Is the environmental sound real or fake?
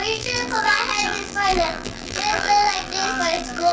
fake